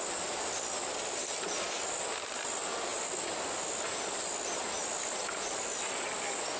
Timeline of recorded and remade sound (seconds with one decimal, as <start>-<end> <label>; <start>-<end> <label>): 0.0-6.6 recorded